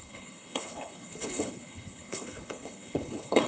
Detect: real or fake fake